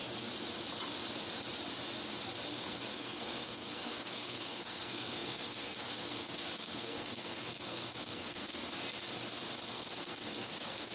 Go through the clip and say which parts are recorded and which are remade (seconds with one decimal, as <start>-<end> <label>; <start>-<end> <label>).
0.0-2.6 recorded; 2.6-8.6 remade; 8.6-9.7 recorded; 9.7-10.9 remade